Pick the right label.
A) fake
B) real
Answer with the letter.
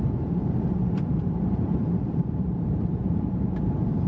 A